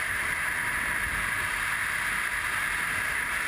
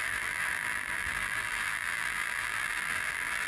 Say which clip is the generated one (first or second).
second